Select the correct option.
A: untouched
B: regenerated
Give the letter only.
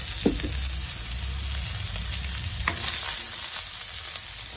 A